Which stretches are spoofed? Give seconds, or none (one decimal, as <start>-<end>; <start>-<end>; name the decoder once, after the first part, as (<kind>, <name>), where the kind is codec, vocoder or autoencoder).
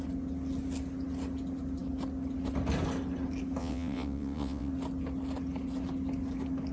3.6-4.7 (vocoder, WaveNeXt)